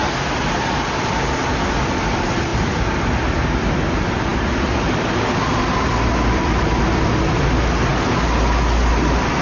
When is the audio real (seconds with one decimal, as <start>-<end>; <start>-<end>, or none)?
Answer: 2.5-3.7; 4.3-5.5; 7.9-8.9